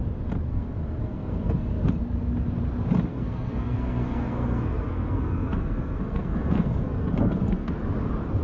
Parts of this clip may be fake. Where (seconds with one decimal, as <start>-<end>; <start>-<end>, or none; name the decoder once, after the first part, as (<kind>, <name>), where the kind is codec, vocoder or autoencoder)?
0.5-1.9 (codec, SNAC); 3.1-7.7

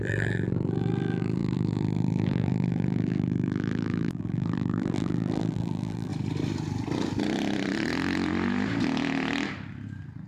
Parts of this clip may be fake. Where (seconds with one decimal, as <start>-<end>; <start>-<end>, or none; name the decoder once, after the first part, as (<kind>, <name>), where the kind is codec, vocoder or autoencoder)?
0.0-6.1 (vocoder, BigVGAN v2)

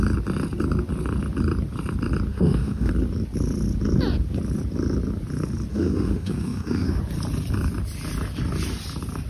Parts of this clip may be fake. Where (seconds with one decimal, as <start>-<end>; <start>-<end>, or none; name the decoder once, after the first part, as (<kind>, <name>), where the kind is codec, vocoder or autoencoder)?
2.3-2.9 (autoencoder, DAC-VAE); 5.7-7.0